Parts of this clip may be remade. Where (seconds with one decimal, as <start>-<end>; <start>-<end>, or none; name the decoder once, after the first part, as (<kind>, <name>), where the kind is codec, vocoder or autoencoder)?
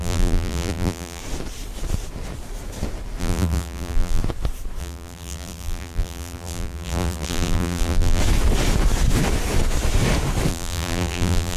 0.0-1.2 (vocoder, BigVGAN v2); 3.2-4.2; 4.8-8.2; 10.5-11.6